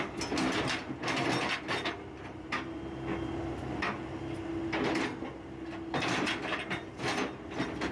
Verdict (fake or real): real